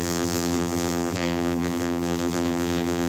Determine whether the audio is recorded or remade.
remade